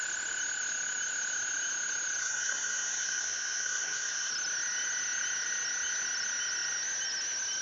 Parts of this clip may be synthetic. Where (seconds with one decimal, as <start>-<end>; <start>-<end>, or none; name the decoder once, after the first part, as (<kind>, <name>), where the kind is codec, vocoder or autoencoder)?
2.2-4.3 (codec, SNAC)